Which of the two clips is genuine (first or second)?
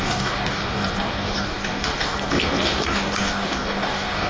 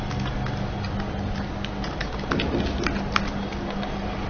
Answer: second